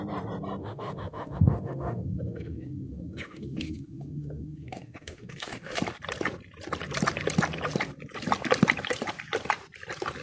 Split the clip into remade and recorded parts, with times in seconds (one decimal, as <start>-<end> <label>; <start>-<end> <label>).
0.0-0.6 recorded; 0.6-5.8 remade; 5.8-10.2 recorded